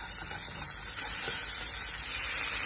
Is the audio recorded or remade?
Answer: recorded